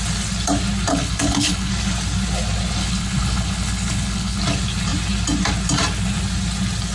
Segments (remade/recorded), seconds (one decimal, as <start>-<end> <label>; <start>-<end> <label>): 0.0-0.9 recorded; 0.9-1.7 remade; 1.7-2.8 recorded; 2.8-4.4 remade; 4.4-6.9 recorded